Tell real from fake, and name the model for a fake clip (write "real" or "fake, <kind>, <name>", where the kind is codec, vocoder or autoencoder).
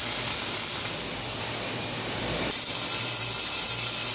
real